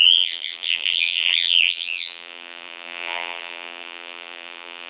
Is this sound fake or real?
fake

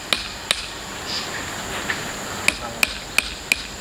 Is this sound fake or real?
real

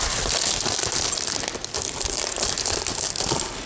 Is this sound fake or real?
real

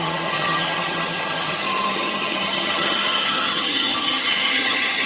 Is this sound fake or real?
fake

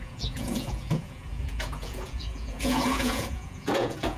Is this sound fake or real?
fake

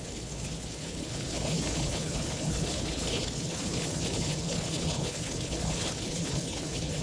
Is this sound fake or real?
fake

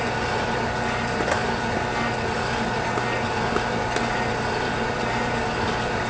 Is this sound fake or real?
real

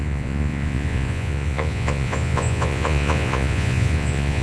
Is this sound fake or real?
fake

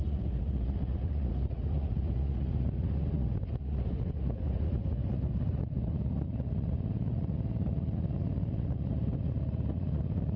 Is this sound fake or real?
fake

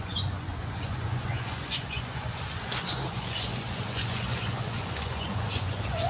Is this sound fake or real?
fake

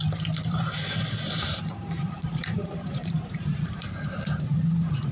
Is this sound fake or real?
fake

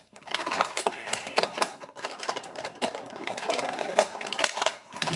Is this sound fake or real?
fake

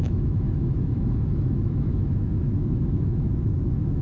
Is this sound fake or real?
fake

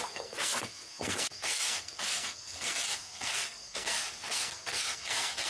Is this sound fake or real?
fake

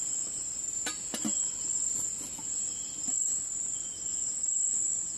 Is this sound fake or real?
real